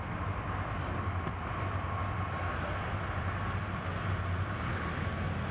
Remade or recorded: recorded